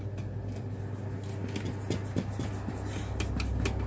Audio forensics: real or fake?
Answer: real